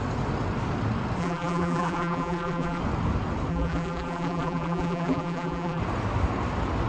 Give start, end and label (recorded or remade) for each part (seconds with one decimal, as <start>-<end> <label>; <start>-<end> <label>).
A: 0.0-1.2 recorded; 1.2-2.8 remade; 2.8-3.5 recorded; 3.5-5.8 remade; 5.8-6.9 recorded